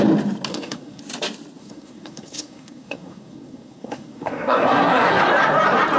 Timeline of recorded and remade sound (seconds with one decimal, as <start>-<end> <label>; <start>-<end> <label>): 0.0-0.5 recorded; 0.5-1.0 remade; 1.0-1.6 recorded; 1.6-5.2 remade; 5.2-6.0 recorded